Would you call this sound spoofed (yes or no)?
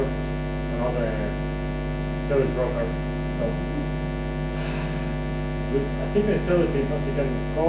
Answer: no